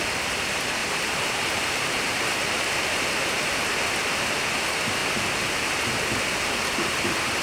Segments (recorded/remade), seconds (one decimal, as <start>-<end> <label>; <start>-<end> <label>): 0.0-0.8 recorded; 0.8-3.6 remade; 3.6-7.4 recorded